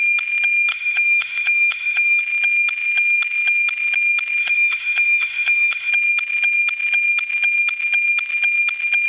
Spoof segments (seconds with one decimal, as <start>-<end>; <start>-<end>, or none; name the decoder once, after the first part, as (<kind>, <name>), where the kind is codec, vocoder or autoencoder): 0.7-2.2 (autoencoder, DAC-VAE); 4.4-5.9